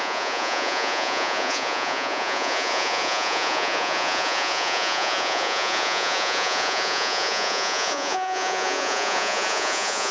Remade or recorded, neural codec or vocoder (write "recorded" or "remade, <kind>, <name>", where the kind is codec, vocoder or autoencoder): remade, vocoder, Vocos